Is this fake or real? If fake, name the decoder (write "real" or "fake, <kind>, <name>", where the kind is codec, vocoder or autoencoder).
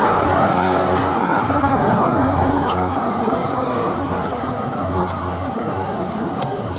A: fake, codec, SNAC